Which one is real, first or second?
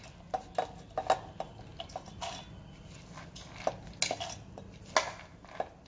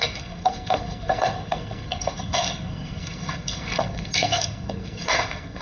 first